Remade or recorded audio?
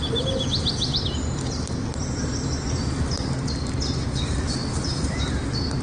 recorded